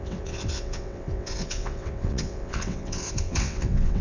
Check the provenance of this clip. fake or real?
fake